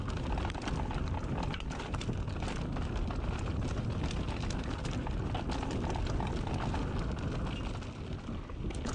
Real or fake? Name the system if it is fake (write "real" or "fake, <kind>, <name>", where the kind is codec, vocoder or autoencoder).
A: real